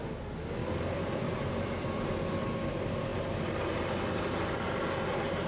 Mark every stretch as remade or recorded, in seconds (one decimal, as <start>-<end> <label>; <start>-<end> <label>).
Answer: 0.0-0.6 recorded; 0.6-2.4 remade; 2.4-5.5 recorded